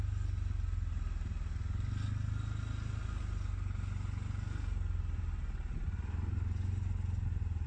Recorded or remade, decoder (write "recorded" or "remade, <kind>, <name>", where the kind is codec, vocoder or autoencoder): recorded